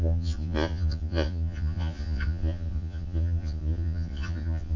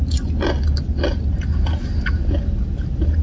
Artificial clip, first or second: first